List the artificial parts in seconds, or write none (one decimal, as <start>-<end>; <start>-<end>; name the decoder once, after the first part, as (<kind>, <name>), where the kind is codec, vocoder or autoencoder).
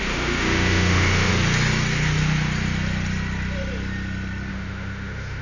0.0-1.3 (autoencoder, DAC-VAE); 4.5-5.4